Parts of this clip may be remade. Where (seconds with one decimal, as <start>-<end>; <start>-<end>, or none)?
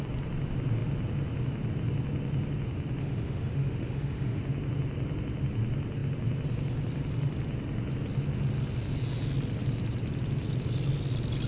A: 3.0-4.4